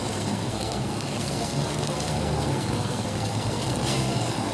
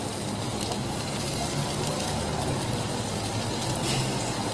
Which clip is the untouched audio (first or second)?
second